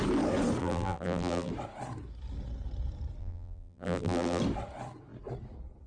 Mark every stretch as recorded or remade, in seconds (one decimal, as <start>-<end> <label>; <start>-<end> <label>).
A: 0.0-0.6 recorded; 0.6-1.5 remade; 1.5-3.2 recorded; 3.2-4.4 remade; 4.4-5.9 recorded